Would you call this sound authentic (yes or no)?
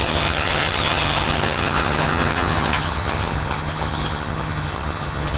no